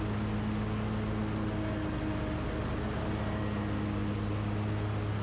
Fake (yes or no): no